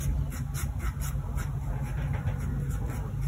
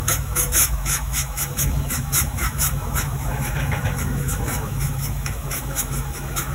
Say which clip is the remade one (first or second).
second